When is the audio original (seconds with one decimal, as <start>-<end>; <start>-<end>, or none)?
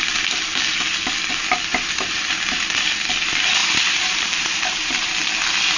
0.0-1.7; 2.4-3.6; 5.1-5.8